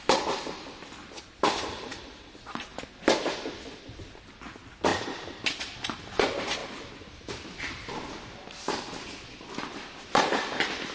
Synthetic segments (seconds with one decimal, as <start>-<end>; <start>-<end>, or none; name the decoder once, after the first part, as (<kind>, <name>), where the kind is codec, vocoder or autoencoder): none